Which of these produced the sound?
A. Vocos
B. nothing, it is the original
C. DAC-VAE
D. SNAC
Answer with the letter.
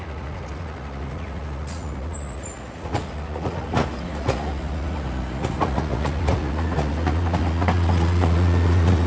A